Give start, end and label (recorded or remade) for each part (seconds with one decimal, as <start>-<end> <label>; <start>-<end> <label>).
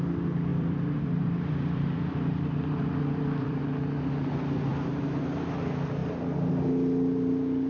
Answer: 0.0-0.5 recorded; 0.5-3.6 remade; 3.6-7.7 recorded